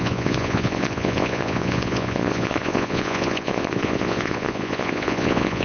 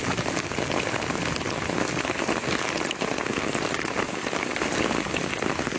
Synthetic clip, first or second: first